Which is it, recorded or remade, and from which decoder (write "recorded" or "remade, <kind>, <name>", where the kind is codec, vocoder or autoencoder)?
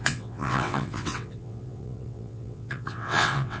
remade, vocoder, WaveNeXt